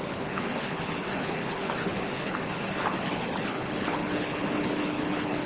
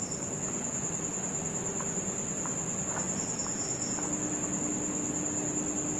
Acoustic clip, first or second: second